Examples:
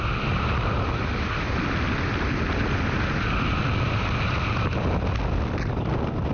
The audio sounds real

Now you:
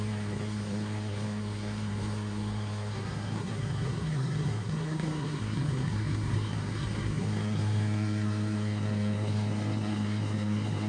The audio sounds fake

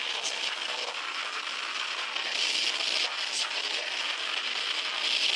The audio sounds real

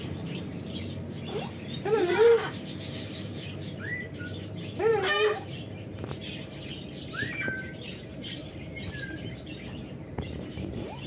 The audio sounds fake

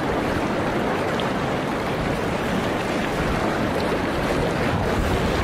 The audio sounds real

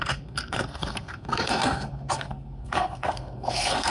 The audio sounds fake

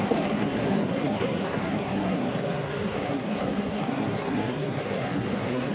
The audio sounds fake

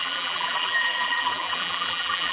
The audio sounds fake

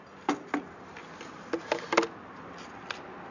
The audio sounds real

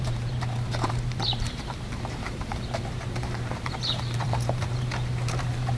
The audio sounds fake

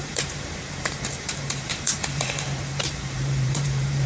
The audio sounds fake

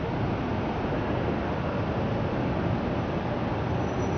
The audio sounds real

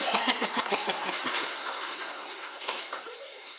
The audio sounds fake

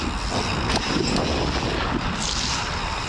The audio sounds real